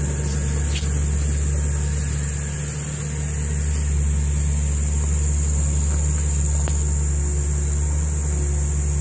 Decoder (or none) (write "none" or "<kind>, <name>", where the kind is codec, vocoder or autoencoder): none